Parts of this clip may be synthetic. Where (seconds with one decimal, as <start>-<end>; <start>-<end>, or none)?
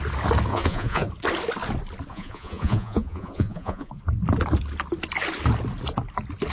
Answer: 0.5-1.1; 2.1-4.0